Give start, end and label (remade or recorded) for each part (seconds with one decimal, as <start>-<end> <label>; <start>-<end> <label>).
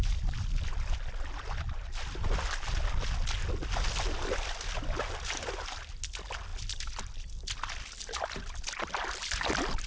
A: 0.0-9.9 recorded